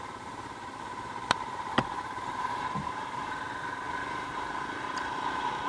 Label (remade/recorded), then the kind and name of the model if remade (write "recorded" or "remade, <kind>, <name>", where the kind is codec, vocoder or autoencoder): remade, vocoder, BigVGAN v2